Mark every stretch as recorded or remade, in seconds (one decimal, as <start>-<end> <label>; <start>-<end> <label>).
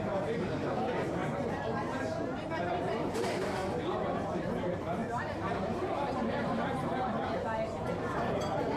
0.0-3.6 remade; 3.6-4.6 recorded; 4.6-8.8 remade